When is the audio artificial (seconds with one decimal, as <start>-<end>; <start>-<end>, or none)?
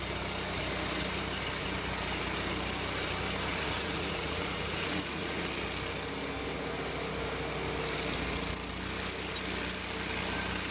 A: 3.5-5.5